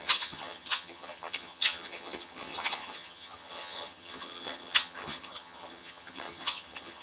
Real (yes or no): no